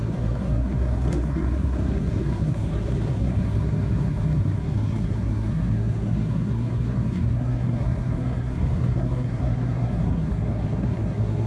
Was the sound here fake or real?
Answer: fake